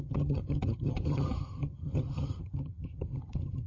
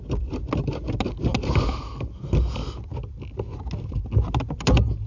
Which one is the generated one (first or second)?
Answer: first